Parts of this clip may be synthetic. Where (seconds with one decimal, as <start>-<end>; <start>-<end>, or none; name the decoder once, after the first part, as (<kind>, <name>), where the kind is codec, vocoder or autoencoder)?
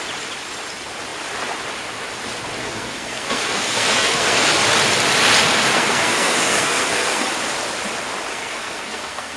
2.6-4.4 (codec, SNAC); 5.7-7.3; 8.3-9.4